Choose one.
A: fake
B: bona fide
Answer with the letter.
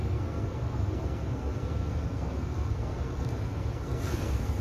A